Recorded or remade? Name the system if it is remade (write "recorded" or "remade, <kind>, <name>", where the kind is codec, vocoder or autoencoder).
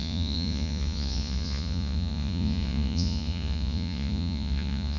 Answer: remade, vocoder, Vocos